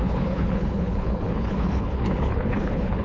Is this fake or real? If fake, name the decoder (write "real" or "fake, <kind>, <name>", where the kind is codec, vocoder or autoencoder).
fake, codec, HILCodec